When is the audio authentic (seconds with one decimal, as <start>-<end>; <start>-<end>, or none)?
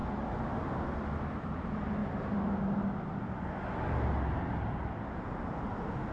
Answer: 0.0-6.1